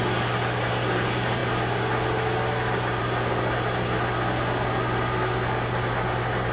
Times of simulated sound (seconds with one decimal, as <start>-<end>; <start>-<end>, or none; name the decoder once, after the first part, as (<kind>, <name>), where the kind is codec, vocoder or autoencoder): none